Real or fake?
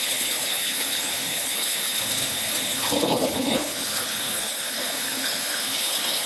fake